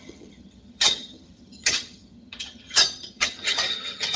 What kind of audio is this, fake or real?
fake